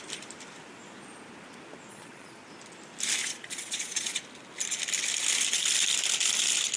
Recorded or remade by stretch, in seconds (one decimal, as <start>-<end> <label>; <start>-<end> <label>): 0.0-1.9 recorded; 1.9-2.4 remade; 2.4-3.2 recorded; 3.2-4.2 remade; 4.2-6.8 recorded

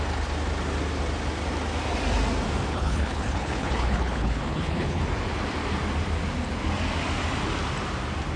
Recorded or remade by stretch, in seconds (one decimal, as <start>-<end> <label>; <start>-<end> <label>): 0.0-2.7 recorded; 2.7-5.0 remade; 5.0-8.4 recorded

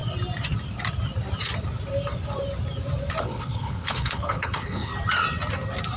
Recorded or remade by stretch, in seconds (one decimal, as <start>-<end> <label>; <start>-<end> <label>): 0.0-3.2 recorded; 3.2-4.9 remade; 4.9-6.0 recorded